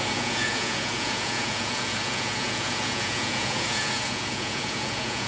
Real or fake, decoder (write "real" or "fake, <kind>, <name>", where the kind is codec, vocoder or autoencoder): fake, vocoder, Vocos